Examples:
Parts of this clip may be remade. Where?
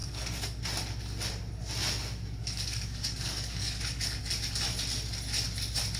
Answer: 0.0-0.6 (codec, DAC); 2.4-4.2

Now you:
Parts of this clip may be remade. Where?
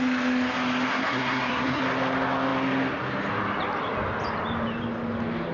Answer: 0.9-1.8 (codec, SNAC)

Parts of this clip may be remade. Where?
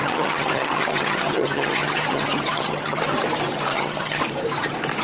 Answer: 0.0-3.0 (vocoder, HiFi-GAN); 3.7-4.2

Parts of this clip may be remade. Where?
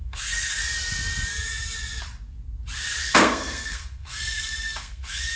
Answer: 0.0-0.6 (codec, SNAC); 3.0-5.4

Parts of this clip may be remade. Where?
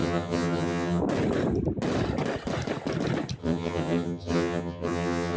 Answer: 0.0-1.0 (vocoder, HiFi-GAN); 3.4-5.4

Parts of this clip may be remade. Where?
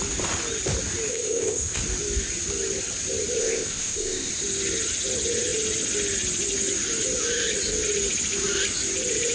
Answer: 1.1-1.8 (codec, ZipCodec); 3.4-4.3